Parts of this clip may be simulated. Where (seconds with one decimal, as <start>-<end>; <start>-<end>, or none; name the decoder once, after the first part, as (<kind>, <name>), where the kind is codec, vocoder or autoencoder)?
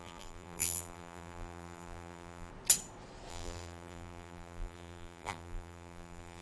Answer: 0.0-2.5 (vocoder, BigVGAN v2); 3.3-6.4